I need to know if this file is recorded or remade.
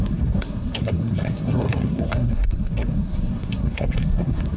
remade